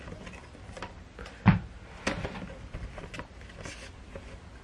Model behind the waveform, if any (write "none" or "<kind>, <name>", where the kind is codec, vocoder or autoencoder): none